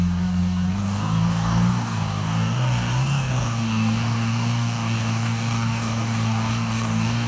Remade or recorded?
remade